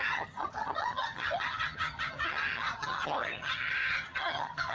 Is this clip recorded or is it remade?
remade